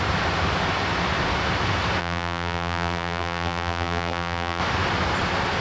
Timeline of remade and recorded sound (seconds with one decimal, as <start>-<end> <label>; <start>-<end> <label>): 0.0-2.0 recorded; 2.0-4.6 remade; 4.6-5.6 recorded